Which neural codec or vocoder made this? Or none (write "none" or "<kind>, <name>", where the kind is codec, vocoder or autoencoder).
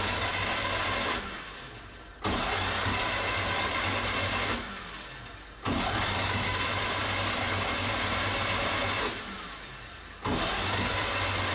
none